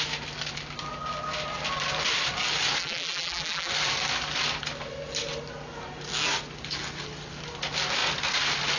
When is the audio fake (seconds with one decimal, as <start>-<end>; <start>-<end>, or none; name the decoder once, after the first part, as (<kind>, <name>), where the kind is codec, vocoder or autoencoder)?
2.8-3.7 (vocoder, BigVGAN v2)